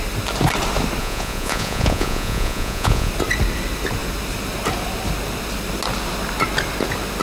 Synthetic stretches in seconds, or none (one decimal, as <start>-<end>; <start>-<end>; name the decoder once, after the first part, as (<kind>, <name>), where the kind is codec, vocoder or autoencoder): 1.0-3.1 (vocoder, Vocos)